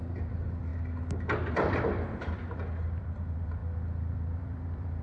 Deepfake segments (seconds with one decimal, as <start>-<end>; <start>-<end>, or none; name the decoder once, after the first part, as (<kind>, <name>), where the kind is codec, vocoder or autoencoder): 0.0-0.7 (vocoder, BigVGAN v2); 1.5-5.0